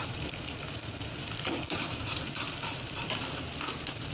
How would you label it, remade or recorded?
remade